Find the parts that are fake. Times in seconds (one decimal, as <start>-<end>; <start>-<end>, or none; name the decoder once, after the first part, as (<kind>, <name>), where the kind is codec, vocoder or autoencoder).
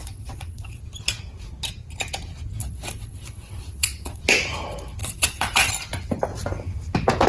0.0-0.8 (vocoder, WaveNeXt); 2.6-4.2; 5.0-5.7